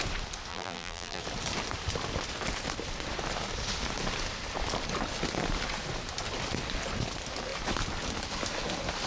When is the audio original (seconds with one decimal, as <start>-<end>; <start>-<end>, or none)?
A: 0.0-0.5; 1.2-9.1